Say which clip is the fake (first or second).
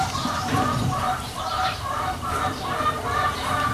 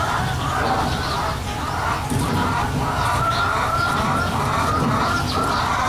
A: first